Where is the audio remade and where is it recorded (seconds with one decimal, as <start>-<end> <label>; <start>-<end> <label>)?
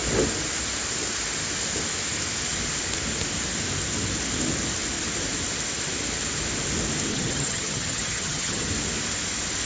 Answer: 0.0-7.1 recorded; 7.1-8.7 remade; 8.7-9.7 recorded